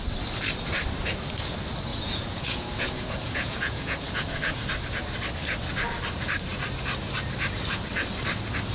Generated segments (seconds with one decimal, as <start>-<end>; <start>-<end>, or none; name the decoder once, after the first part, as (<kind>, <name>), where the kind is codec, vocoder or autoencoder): 1.9-4.6 (vocoder, Vocos)